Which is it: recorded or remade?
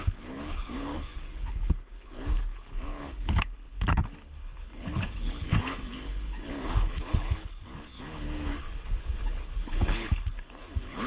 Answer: remade